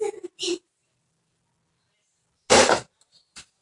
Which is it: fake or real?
real